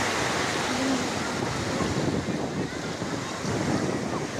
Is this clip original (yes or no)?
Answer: yes